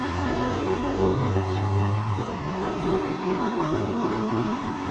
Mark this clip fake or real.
fake